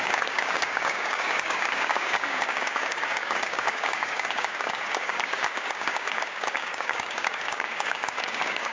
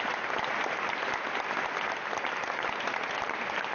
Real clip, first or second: second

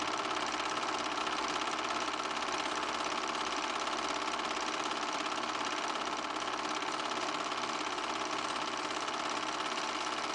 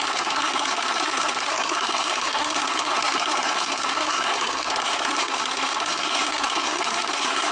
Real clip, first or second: first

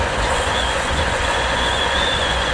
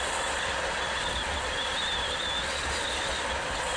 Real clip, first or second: second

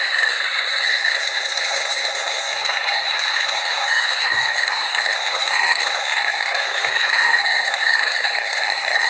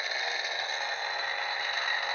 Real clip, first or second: second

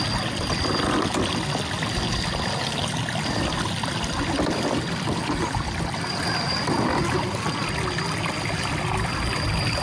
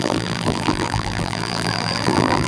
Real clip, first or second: first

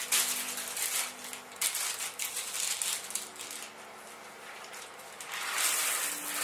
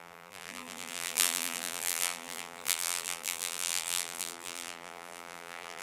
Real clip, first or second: first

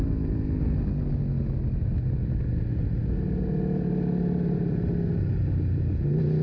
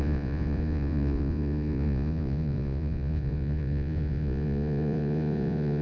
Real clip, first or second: first